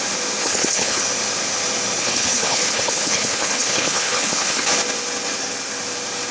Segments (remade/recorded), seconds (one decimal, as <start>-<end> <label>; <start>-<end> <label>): 0.0-0.4 recorded; 0.4-1.0 remade; 1.0-2.0 recorded; 2.0-4.7 remade; 4.7-6.3 recorded